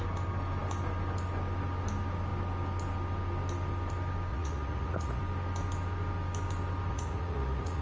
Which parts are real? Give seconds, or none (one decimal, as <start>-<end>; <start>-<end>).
0.0-4.3; 5.2-6.9